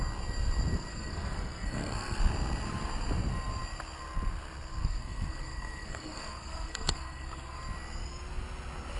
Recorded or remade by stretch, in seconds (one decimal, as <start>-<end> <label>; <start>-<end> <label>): 0.0-0.9 recorded; 0.9-2.2 remade; 2.2-4.8 recorded; 4.8-7.6 remade; 7.6-9.0 recorded